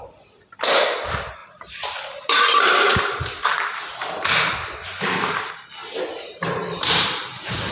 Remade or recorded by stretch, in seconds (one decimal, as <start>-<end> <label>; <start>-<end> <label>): 0.0-1.4 recorded; 1.4-5.5 remade; 5.5-6.1 recorded; 6.1-7.7 remade